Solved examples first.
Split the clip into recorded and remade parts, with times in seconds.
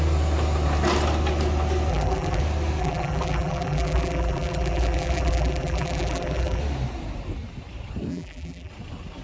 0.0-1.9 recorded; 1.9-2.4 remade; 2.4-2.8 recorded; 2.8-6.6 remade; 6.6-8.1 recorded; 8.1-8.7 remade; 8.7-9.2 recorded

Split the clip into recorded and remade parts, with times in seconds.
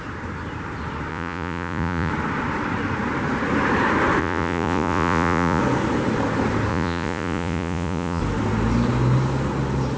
0.0-1.1 recorded; 1.1-2.1 remade; 2.1-4.2 recorded; 4.2-5.6 remade; 5.6-6.7 recorded; 6.7-8.2 remade; 8.2-10.0 recorded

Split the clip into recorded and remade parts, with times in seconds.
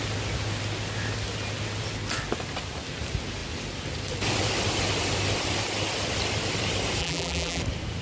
0.0-7.0 recorded; 7.0-7.6 remade; 7.6-8.0 recorded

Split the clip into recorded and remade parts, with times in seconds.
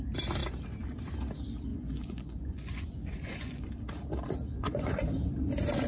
0.0-1.7 recorded; 1.7-3.7 remade; 3.7-4.5 recorded; 4.5-5.0 remade; 5.0-5.9 recorded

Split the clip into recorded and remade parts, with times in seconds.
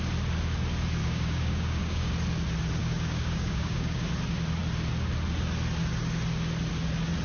0.0-1.0 recorded; 1.0-2.1 remade; 2.1-2.8 recorded; 2.8-4.0 remade; 4.0-7.2 recorded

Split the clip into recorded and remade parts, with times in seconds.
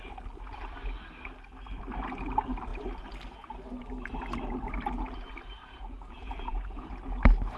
0.0-5.6 recorded; 5.6-7.1 remade; 7.1-7.6 recorded